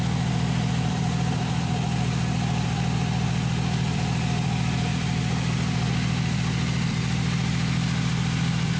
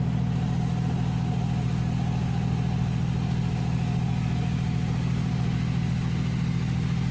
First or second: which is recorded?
second